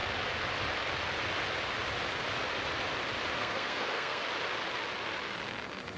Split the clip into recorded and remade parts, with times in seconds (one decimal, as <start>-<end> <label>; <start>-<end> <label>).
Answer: 0.0-3.4 recorded; 3.4-4.2 remade; 4.2-6.0 recorded